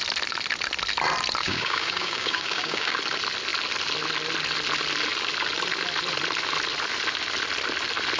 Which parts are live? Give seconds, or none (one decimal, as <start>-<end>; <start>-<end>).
0.0-1.4; 3.0-8.2